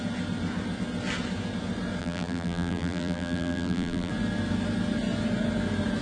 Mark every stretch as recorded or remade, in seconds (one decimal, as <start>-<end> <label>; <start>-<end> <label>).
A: 0.0-2.0 recorded; 2.0-4.1 remade; 4.1-6.0 recorded